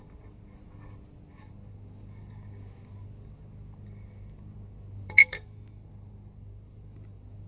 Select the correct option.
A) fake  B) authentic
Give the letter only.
B